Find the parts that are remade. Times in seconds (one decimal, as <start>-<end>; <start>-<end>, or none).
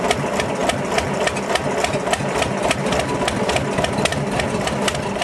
none